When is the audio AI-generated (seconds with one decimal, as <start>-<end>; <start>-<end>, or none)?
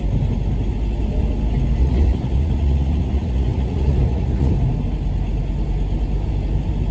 1.8-4.5